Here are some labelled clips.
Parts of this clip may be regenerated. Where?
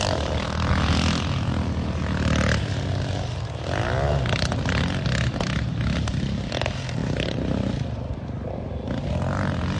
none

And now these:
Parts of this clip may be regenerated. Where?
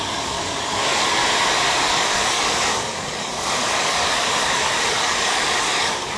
0.0-1.2 (codec, DAC); 1.8-6.2